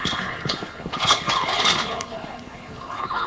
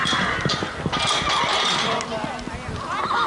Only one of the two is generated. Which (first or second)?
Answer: first